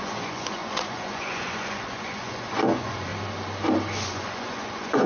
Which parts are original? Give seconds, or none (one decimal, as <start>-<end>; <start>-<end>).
3.1-4.0